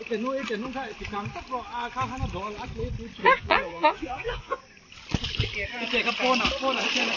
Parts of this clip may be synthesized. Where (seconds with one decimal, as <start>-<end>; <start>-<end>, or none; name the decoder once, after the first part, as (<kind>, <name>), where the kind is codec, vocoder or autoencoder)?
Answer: 3.2-4.6 (vocoder, Vocos)